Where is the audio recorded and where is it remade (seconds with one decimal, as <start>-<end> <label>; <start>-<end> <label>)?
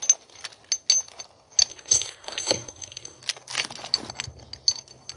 0.0-1.7 recorded; 1.7-3.2 remade; 3.2-5.2 recorded